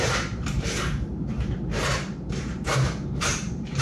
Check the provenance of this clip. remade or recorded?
remade